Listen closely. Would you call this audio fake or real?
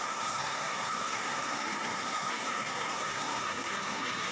fake